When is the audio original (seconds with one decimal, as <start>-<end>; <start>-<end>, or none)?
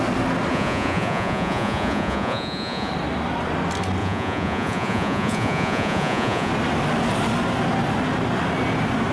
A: 0.0-0.5; 2.9-4.0; 6.5-9.1